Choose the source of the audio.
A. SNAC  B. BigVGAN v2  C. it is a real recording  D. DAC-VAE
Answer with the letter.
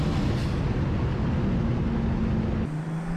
C